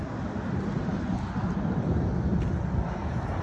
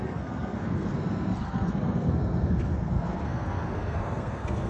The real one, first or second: first